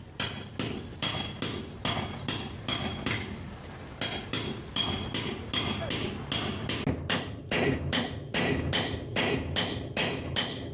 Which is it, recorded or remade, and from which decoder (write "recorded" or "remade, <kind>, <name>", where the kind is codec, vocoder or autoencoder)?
recorded